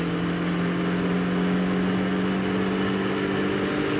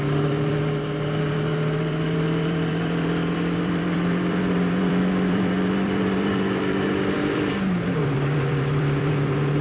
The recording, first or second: first